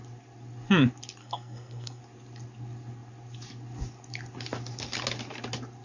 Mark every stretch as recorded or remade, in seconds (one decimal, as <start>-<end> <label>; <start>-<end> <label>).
0.0-1.2 recorded; 1.2-2.0 remade; 2.0-5.8 recorded